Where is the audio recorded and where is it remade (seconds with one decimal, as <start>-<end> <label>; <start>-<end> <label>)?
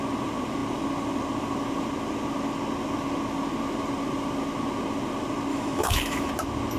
0.0-5.5 recorded; 5.5-6.3 remade; 6.3-6.8 recorded